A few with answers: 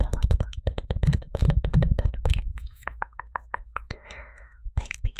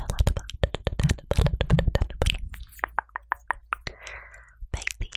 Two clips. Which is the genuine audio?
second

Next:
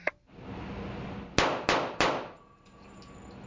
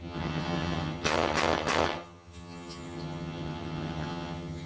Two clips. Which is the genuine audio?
first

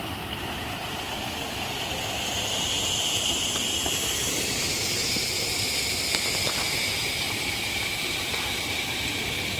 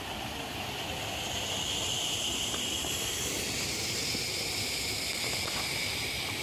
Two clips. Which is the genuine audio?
second